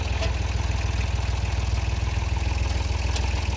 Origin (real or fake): real